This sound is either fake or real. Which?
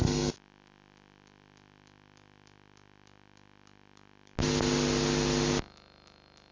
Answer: real